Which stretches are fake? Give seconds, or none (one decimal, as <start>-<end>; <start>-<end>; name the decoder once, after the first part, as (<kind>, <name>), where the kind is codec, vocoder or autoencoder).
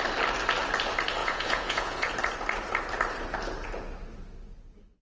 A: 1.2-2.1 (vocoder, Vocos)